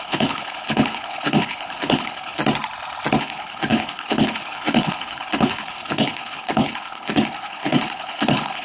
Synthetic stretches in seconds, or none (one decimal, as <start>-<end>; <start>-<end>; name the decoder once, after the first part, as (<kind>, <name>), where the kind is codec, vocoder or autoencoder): 0.0-2.4 (codec, HILCodec); 3.2-8.6